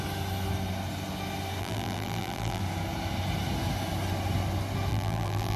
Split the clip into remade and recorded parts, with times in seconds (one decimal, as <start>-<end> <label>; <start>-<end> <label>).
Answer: 0.0-1.6 recorded; 1.6-2.6 remade; 2.6-4.9 recorded; 4.9-5.6 remade